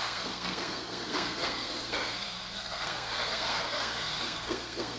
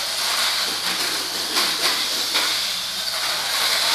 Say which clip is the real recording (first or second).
second